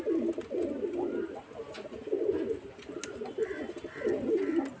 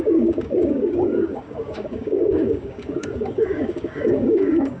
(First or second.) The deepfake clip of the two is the second